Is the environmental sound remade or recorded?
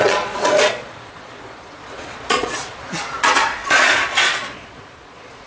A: remade